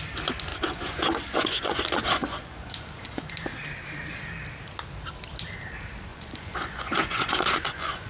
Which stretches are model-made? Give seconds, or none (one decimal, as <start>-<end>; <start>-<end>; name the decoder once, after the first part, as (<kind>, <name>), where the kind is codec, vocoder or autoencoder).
0.5-3.3 (vocoder, Vocos); 6.1-8.1